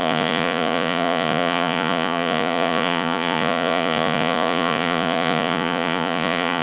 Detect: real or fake fake